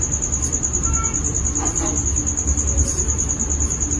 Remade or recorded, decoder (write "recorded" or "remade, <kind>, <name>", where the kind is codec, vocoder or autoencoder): recorded